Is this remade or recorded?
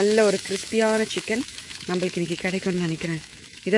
remade